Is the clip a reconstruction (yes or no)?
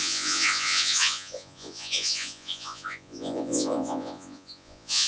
yes